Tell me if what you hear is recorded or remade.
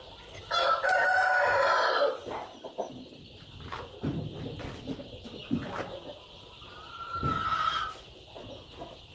recorded